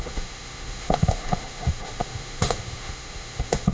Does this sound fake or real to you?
fake